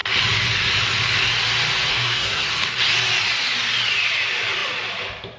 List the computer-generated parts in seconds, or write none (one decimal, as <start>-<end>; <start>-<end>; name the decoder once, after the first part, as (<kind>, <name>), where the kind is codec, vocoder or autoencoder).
1.9-2.5 (codec, SNAC)